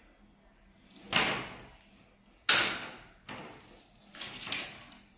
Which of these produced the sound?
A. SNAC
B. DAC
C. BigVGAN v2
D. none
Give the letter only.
D